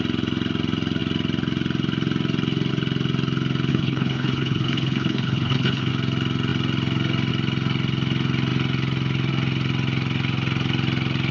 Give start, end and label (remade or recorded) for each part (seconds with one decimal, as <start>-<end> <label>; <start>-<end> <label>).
0.0-3.7 recorded; 3.7-5.9 remade; 5.9-11.3 recorded